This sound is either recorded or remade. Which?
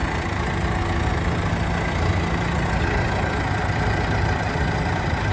recorded